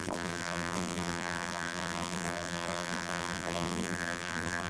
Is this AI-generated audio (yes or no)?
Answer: yes